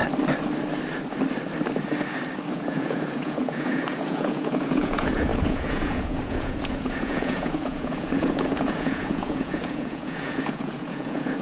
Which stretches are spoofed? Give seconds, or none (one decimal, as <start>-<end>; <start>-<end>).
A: 2.5-11.4

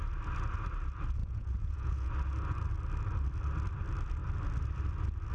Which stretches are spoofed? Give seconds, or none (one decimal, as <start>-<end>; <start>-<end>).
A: 1.2-2.1

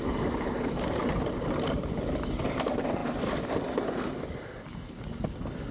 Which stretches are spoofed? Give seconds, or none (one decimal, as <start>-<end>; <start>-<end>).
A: none

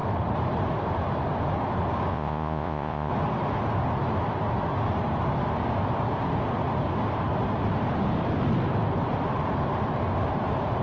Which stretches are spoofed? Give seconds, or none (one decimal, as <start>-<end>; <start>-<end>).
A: 2.1-3.1

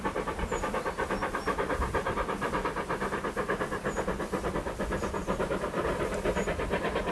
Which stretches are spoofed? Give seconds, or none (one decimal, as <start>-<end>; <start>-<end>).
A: none